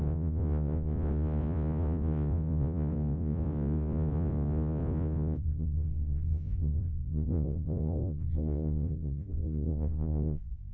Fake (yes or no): yes